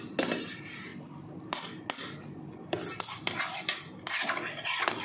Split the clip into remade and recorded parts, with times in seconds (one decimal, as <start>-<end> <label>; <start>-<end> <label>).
0.0-5.0 recorded